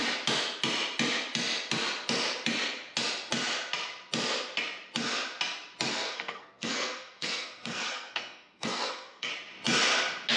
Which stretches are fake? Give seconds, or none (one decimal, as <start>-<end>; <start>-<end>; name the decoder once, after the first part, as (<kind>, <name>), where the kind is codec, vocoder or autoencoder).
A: 5.9-9.3 (codec, SNAC)